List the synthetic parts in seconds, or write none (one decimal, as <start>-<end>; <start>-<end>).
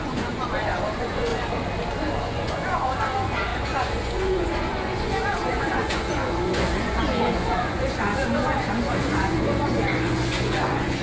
0.0-1.3; 2.2-11.0